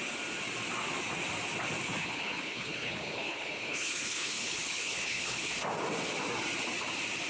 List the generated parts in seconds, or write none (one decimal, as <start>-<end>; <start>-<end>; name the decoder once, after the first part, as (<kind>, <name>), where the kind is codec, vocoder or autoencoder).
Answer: 2.0-5.5 (codec, HILCodec)